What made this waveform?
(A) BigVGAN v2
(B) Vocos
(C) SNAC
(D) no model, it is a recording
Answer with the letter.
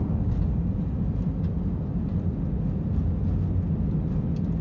D